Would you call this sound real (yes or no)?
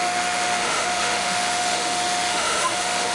no